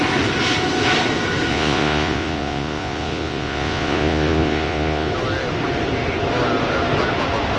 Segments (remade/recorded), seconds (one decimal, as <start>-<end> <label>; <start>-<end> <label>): 0.0-1.5 recorded; 1.5-5.1 remade; 5.1-7.6 recorded